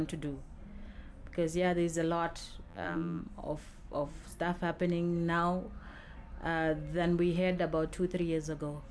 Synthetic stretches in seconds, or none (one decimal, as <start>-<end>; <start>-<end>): 2.7-3.2